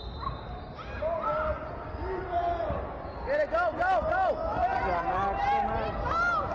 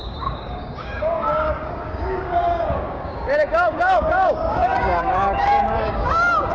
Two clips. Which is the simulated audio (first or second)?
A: second